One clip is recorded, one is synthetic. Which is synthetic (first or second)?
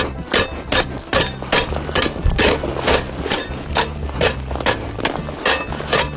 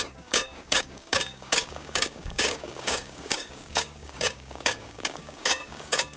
second